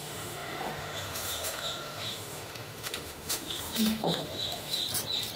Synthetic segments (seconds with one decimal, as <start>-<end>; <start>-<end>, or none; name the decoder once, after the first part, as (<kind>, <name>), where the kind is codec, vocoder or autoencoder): 0.0-4.8 (autoencoder, DAC-VAE)